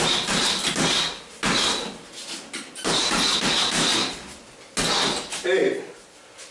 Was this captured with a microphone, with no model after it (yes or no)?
yes